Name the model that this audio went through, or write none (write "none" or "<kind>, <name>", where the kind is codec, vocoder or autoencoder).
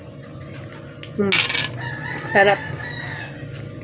none